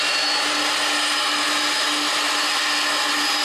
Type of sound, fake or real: real